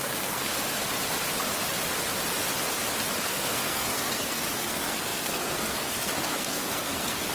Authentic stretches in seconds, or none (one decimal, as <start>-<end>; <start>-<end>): 0.5-3.2